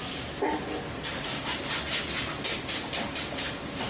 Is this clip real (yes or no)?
yes